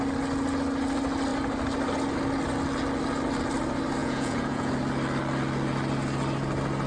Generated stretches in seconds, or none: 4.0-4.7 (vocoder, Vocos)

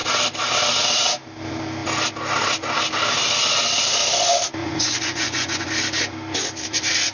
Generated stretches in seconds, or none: 4.6-5.7 (vocoder, Vocos)

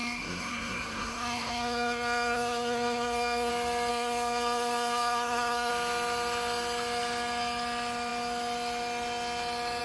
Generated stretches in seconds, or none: 0.0-3.5 (codec, SNAC); 3.9-5.7

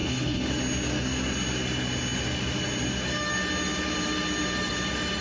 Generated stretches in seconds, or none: 0.0-0.5 (codec, HILCodec)

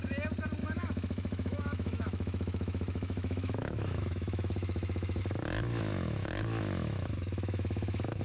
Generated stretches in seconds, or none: 0.6-5.2 (autoencoder, DAC-VAE); 5.9-8.2

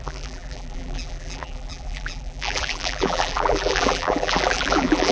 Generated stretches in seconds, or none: 0.0-5.1 (vocoder, BigVGAN v2)

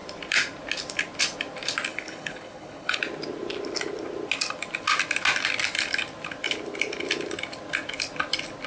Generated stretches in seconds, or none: 1.9-3.0 (codec, HILCodec)

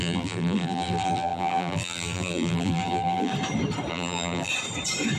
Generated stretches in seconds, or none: 0.0-3.3 (vocoder, BigVGAN v2); 3.9-4.5